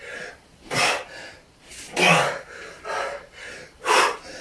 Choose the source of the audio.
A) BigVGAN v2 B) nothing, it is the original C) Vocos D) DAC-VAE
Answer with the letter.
B